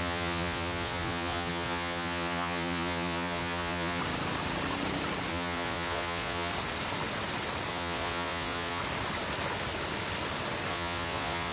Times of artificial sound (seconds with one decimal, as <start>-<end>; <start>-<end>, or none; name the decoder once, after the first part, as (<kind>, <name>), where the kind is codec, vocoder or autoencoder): 0.0-4.0 (vocoder, Vocos); 5.3-6.5; 7.7-8.8; 10.7-11.5